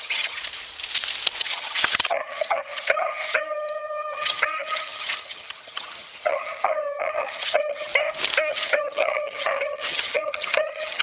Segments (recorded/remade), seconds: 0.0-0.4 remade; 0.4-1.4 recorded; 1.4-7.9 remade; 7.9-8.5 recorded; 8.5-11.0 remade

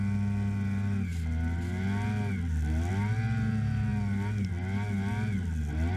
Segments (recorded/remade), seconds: 0.0-6.0 recorded

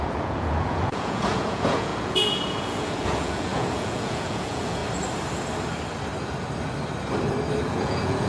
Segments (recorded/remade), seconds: 0.0-4.8 remade; 4.8-7.6 recorded; 7.6-8.3 remade

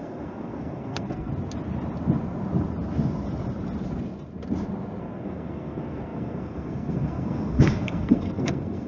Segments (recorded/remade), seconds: 0.0-1.3 remade; 1.3-5.0 recorded; 5.0-8.9 remade

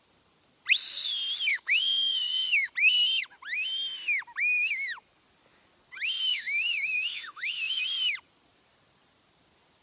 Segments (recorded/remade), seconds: 0.0-1.5 recorded; 1.5-2.7 remade; 2.7-6.3 recorded; 6.3-7.8 remade; 7.8-9.8 recorded

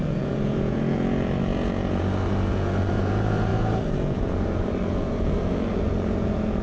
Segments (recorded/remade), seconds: 0.0-6.6 remade

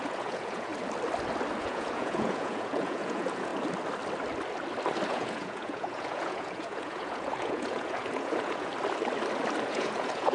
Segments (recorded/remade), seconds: 0.0-0.7 remade; 0.7-1.6 recorded; 1.6-3.5 remade; 3.5-5.1 recorded; 5.1-8.7 remade; 8.7-9.7 recorded; 9.7-10.3 remade

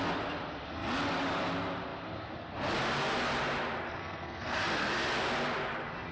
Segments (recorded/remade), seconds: 0.0-4.0 recorded; 4.0-4.9 remade; 4.9-6.1 recorded